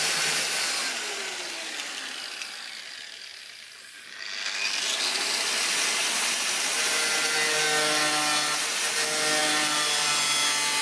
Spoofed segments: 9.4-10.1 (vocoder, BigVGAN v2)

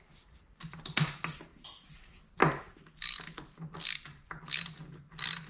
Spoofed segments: none